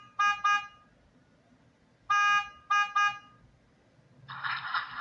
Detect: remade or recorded recorded